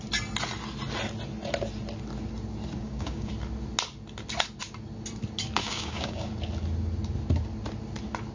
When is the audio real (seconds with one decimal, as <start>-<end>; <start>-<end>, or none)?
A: 0.0-2.8; 3.3-5.6; 6.3-8.3